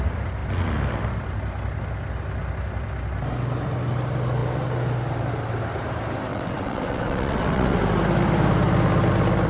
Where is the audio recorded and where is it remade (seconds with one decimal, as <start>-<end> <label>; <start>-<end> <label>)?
0.0-6.3 recorded; 6.3-7.8 remade; 7.8-9.5 recorded